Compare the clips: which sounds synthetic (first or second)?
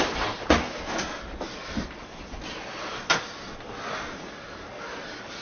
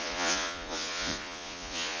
second